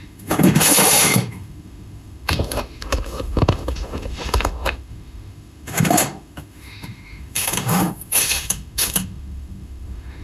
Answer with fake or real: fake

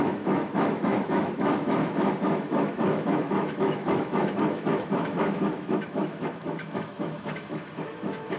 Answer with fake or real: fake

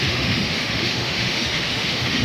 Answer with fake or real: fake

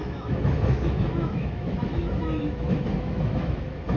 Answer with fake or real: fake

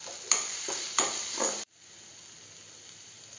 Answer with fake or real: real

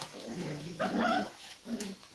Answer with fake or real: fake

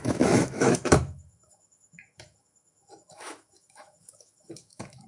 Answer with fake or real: fake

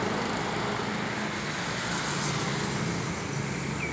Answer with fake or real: real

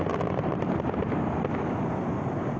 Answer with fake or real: real